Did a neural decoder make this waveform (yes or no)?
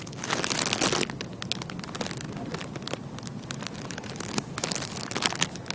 no